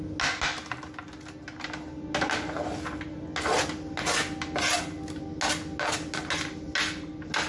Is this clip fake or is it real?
real